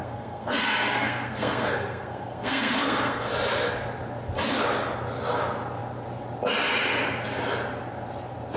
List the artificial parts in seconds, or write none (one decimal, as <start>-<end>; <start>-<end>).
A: 0.0-3.3